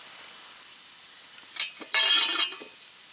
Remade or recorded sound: recorded